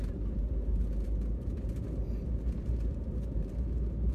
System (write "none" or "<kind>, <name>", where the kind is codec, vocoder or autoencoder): vocoder, BigVGAN v2